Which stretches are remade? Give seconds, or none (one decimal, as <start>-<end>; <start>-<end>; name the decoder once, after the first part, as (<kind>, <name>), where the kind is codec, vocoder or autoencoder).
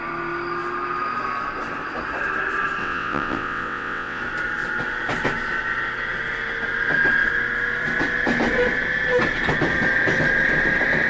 2.8-4.2 (vocoder, WaveNeXt)